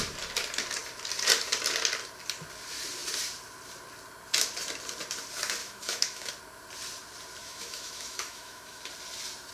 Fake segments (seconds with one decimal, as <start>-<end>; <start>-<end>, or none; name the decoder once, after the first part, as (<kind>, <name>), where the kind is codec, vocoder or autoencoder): 5.6-6.3 (autoencoder, DAC-VAE); 7.4-8.8